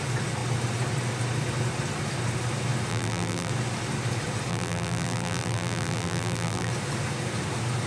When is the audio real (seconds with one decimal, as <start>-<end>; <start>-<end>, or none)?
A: 0.0-2.9; 3.5-4.5; 6.7-7.9